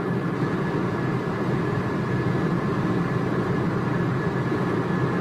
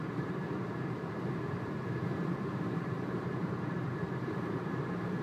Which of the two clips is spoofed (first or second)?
second